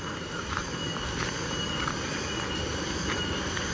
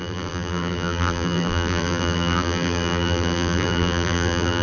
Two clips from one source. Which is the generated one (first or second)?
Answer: second